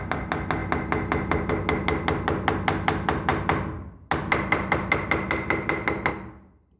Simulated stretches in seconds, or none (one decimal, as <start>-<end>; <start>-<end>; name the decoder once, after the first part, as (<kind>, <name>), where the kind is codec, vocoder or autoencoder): none